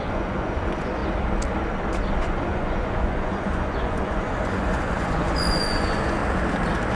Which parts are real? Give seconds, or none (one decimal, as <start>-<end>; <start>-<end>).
1.0-2.2; 6.2-6.9